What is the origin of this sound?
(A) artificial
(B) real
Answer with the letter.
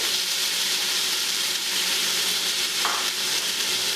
A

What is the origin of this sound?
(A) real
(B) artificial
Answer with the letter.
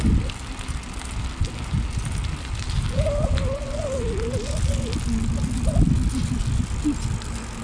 A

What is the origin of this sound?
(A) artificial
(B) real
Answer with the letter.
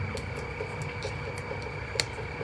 B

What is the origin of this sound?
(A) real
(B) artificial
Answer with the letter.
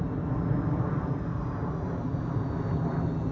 A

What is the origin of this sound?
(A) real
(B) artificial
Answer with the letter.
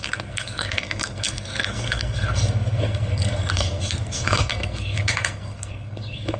B